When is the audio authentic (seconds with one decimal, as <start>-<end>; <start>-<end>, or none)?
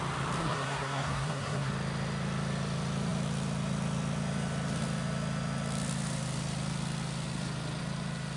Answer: 0.0-0.4; 1.7-8.4